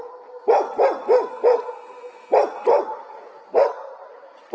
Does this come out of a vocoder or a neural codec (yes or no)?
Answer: no